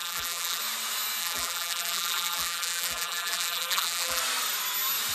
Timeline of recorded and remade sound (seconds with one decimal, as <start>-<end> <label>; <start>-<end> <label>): 0.0-0.6 remade; 0.6-1.2 recorded; 1.2-4.2 remade; 4.2-5.1 recorded